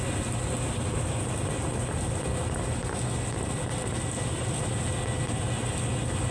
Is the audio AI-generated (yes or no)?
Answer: no